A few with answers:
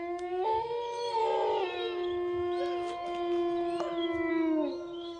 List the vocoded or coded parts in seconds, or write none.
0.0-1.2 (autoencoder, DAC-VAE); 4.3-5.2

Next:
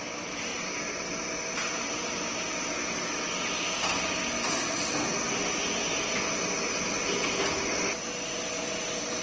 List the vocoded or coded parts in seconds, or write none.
none

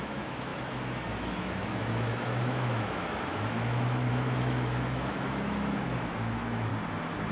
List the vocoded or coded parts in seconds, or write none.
0.0-6.7 (autoencoder, DAC-VAE)

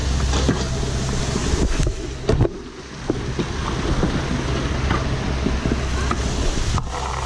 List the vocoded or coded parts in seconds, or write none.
none